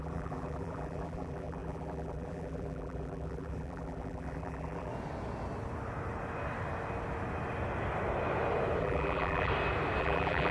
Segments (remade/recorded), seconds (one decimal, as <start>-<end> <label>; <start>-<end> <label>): 0.0-4.9 remade; 4.9-8.8 recorded; 8.8-9.5 remade; 9.5-10.0 recorded; 10.0-10.5 remade